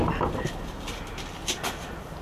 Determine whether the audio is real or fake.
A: real